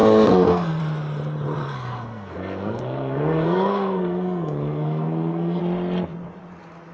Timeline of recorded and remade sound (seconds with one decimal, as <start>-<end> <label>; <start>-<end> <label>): 0.0-0.8 remade; 0.8-1.6 recorded; 1.6-5.6 remade; 5.6-6.9 recorded